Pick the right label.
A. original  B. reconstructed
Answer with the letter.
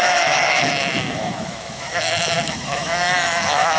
B